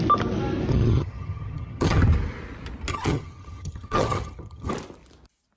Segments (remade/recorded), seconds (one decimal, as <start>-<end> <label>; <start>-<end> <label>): 0.0-0.7 recorded; 0.7-2.0 remade; 2.0-2.9 recorded; 2.9-4.7 remade; 4.7-5.6 recorded